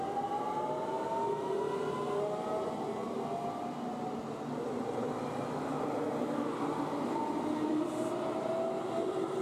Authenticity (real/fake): real